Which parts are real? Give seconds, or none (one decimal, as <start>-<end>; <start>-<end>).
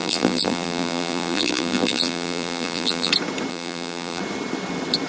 3.1-3.5; 4.2-5.1